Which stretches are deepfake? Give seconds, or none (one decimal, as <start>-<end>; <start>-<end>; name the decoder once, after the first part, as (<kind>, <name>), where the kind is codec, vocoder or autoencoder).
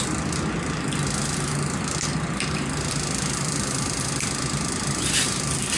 2.1-5.8 (vocoder, BigVGAN v2)